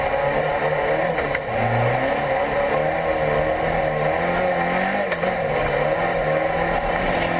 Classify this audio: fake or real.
real